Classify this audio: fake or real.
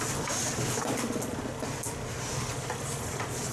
real